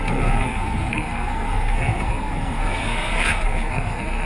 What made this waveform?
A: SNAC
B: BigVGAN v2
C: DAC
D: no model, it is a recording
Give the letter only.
A